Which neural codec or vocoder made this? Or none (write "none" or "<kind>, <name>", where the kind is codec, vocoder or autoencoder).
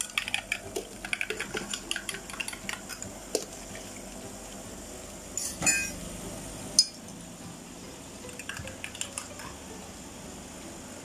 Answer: none